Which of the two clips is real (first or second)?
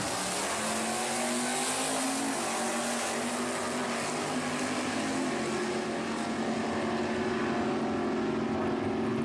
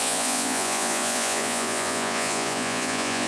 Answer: first